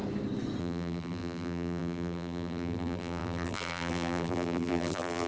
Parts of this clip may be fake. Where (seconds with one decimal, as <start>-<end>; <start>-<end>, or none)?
0.6-5.3